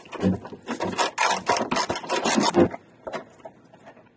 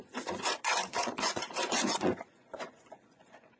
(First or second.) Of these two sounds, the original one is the first